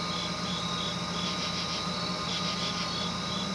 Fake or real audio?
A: real